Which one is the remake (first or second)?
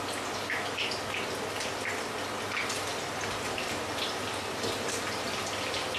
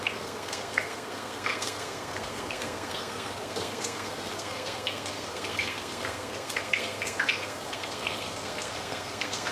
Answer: second